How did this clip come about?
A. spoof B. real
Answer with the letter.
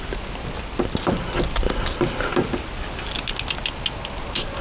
B